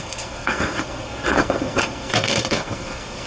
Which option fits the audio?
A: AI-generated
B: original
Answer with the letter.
A